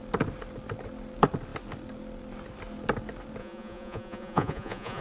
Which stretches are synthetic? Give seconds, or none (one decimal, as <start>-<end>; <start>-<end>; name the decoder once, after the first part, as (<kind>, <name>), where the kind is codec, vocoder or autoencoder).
3.4-5.0 (vocoder, Vocos)